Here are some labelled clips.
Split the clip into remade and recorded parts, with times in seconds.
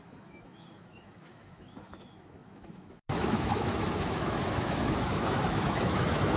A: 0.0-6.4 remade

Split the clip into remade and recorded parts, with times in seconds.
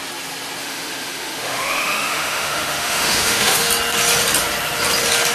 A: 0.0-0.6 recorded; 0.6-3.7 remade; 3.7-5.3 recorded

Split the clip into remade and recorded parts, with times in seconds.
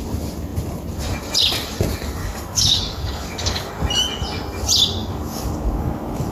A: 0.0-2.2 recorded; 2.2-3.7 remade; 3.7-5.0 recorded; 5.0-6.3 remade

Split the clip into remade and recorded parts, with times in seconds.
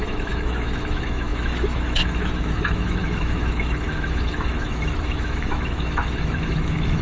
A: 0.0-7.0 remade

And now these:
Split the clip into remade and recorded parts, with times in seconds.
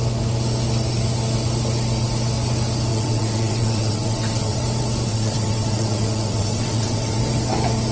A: 0.0-2.9 recorded; 2.9-4.6 remade; 4.6-5.1 recorded; 5.1-7.2 remade; 7.2-7.9 recorded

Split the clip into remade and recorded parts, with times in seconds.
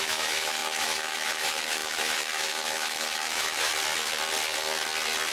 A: 0.0-3.7 remade; 3.7-5.3 recorded